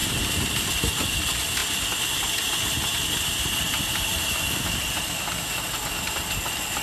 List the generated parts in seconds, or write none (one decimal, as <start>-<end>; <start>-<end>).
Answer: 0.0-6.8